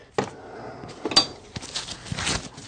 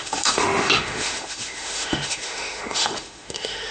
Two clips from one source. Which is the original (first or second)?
first